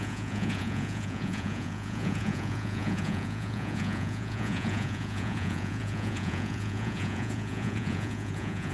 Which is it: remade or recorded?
remade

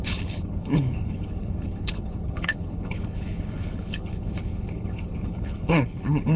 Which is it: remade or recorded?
remade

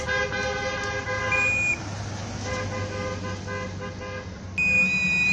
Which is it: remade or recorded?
recorded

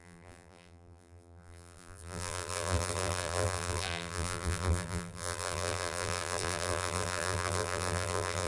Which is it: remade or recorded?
remade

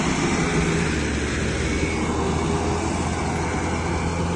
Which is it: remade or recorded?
recorded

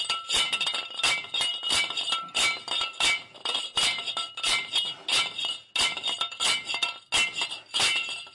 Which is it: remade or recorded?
recorded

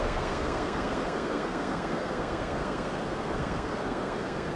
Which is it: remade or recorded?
remade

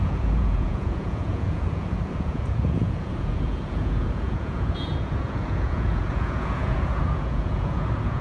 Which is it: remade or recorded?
remade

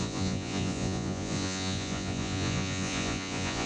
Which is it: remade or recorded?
remade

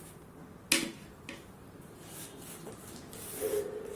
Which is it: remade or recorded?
recorded